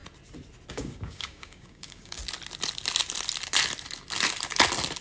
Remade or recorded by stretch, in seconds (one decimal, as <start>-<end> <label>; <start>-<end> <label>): 0.0-0.7 recorded; 0.7-2.2 remade; 2.2-5.0 recorded